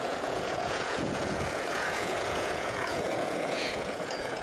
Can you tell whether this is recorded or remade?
remade